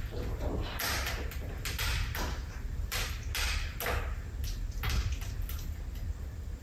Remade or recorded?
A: recorded